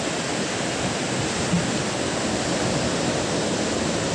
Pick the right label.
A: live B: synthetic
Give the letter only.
A